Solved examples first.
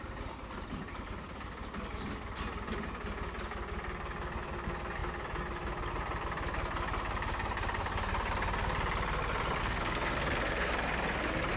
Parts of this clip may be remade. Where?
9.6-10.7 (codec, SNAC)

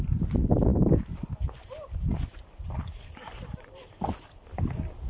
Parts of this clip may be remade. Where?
none

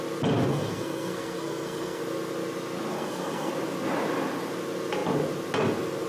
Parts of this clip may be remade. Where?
0.5-2.0 (codec, SNAC); 2.9-3.5

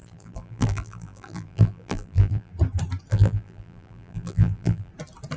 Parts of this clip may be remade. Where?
0.0-2.5 (vocoder, BigVGAN v2); 3.1-4.9

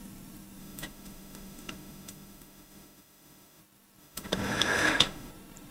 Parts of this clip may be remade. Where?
0.6-3.6 (autoencoder, DAC-VAE); 4.0-5.3

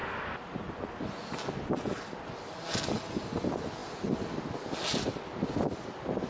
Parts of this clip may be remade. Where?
none

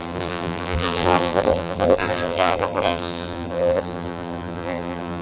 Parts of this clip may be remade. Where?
0.0-5.2 (vocoder, BigVGAN v2)

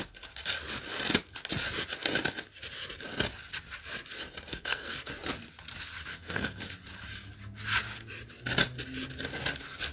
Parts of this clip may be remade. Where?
4.5-5.1 (codec, SNAC); 6.1-6.6